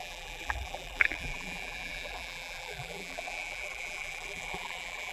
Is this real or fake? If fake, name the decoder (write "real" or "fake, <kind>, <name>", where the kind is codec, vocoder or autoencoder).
fake, vocoder, BigVGAN v2